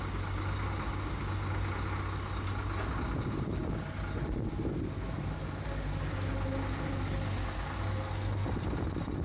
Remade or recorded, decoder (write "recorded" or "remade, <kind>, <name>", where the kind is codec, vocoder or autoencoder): recorded